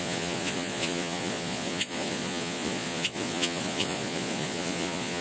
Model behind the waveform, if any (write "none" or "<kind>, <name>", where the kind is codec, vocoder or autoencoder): vocoder, Vocos